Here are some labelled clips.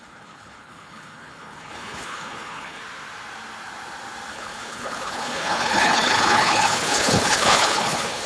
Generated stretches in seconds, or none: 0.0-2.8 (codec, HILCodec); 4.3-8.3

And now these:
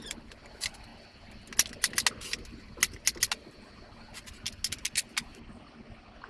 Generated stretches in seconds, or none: none